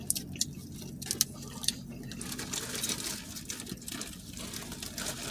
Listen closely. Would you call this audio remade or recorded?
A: recorded